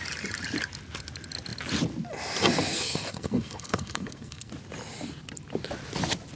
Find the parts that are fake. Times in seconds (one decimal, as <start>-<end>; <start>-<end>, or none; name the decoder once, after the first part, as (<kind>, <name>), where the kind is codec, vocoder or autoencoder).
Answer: 2.7-4.5 (codec, SNAC)